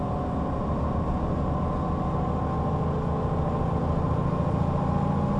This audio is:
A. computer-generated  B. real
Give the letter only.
B